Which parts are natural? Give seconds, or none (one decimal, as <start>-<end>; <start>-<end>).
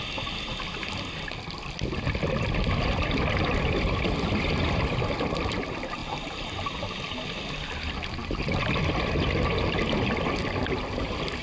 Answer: 0.0-6.0; 6.5-11.4